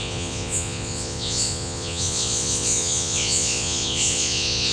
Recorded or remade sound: remade